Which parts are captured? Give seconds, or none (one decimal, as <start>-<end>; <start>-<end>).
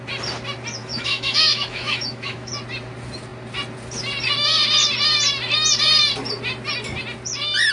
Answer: 0.0-0.8; 2.5-7.7